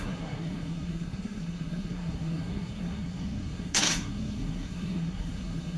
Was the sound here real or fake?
fake